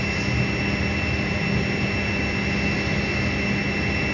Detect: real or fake real